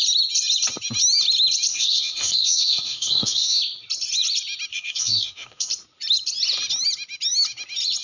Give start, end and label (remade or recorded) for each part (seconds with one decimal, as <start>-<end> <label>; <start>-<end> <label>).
0.0-1.7 recorded; 1.7-3.6 remade; 3.6-4.7 recorded; 4.7-5.7 remade; 5.7-8.0 recorded